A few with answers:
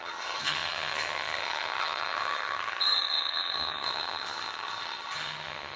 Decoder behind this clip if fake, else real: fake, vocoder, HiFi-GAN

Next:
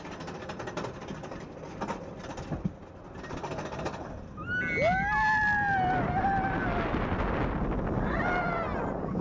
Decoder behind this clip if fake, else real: real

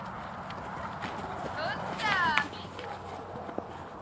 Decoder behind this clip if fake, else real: real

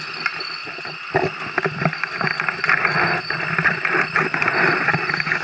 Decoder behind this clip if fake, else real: real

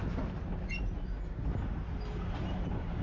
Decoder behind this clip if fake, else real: real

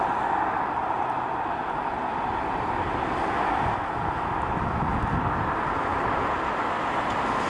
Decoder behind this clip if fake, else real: real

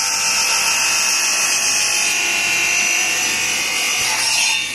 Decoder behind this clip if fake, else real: real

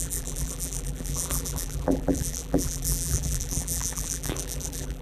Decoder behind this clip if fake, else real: fake, vocoder, BigVGAN v2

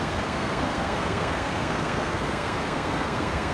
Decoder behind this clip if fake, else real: fake, codec, SNAC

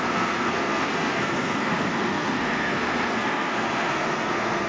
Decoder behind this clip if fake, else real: fake, codec, SNAC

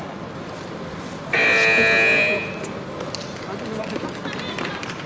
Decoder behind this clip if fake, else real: real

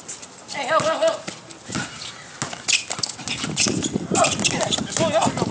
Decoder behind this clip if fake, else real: real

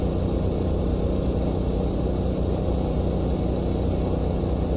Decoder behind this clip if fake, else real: real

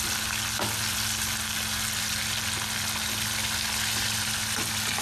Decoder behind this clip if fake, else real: real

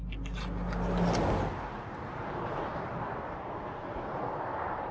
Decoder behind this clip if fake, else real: real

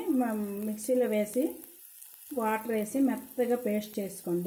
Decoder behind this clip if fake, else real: real